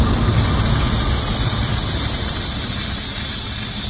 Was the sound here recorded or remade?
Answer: recorded